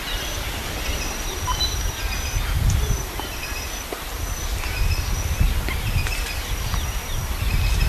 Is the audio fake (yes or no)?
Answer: no